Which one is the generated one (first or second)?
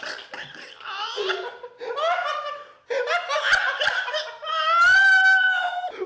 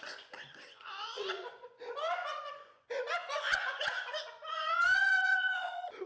second